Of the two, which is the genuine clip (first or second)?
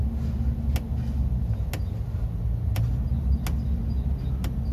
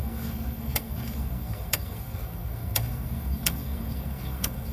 first